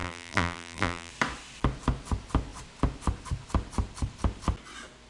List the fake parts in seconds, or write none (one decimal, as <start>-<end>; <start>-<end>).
0.0-1.1